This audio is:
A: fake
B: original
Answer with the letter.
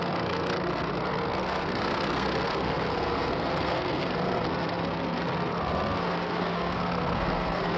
A